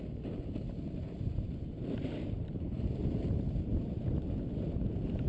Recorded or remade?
recorded